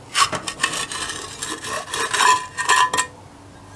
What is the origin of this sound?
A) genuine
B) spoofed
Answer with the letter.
A